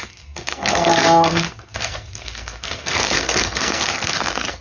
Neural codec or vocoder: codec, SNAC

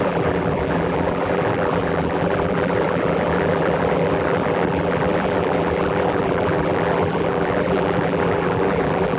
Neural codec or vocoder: vocoder, BigVGAN v2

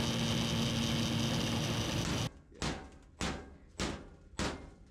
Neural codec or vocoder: none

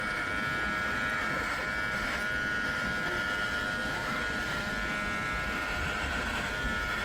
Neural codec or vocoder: none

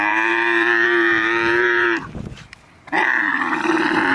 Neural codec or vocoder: vocoder, BigVGAN v2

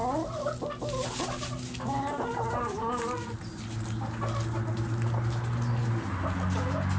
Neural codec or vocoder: none